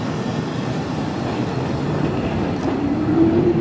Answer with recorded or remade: remade